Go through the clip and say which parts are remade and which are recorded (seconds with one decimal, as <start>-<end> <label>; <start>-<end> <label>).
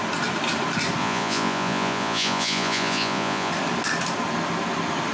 0.0-1.0 recorded; 1.0-3.5 remade; 3.5-5.1 recorded